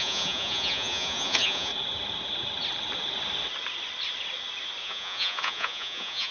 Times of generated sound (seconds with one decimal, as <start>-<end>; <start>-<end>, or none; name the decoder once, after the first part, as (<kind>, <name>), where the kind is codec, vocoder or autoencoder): 0.0-1.7 (vocoder, Vocos); 4.8-6.3